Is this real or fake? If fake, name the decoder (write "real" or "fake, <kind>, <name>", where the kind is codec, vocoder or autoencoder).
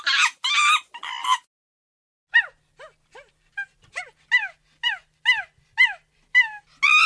real